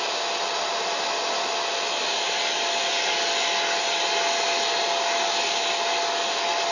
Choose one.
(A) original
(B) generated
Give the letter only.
A